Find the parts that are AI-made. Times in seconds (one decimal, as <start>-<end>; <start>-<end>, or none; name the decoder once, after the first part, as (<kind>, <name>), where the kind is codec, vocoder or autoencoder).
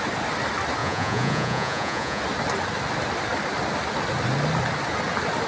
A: 0.8-2.2 (vocoder, Vocos)